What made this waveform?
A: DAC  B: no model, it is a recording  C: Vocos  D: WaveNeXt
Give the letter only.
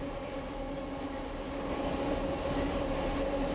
B